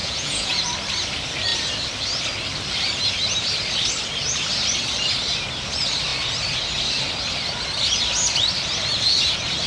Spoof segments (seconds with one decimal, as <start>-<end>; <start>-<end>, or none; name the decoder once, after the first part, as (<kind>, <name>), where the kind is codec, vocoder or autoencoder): 0.0-0.6 (vocoder, Vocos)

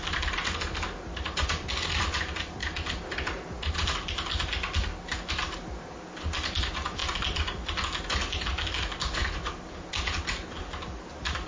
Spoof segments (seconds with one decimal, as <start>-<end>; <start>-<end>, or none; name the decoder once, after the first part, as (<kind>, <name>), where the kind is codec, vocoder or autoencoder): none